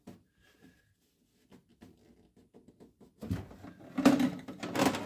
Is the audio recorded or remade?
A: recorded